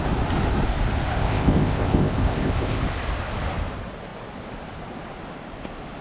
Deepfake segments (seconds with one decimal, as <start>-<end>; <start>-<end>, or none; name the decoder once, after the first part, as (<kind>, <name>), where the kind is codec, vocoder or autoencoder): 1.1-2.8 (codec, ZipCodec)